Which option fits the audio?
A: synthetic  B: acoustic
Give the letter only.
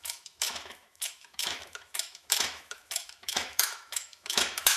A